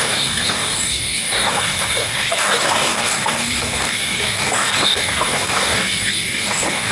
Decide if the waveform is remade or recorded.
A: remade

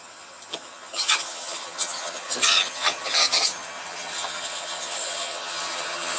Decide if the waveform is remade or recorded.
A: remade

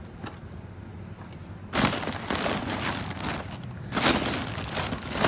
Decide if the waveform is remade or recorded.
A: recorded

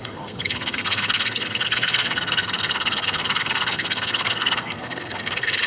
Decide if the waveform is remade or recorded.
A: remade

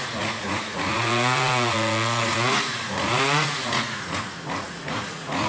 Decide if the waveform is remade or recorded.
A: remade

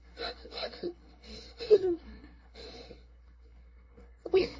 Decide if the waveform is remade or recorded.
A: remade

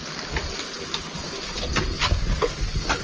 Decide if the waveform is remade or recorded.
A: recorded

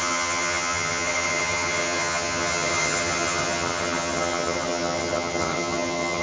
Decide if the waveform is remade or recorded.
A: remade